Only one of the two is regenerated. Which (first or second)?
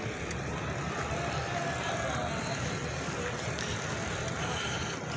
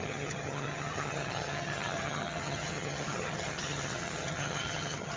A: second